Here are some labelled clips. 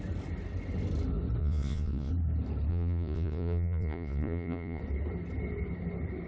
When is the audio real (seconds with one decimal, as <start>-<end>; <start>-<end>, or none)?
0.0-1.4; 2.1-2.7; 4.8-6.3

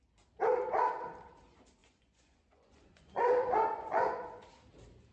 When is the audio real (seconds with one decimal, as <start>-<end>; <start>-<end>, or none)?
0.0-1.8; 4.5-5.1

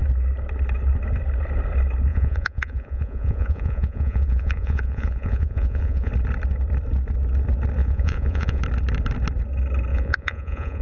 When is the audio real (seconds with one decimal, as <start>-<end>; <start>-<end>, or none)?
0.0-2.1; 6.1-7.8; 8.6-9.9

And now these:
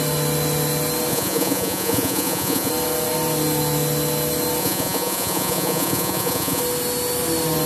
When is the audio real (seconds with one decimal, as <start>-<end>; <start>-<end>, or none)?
0.0-1.1; 2.7-4.6; 6.6-7.7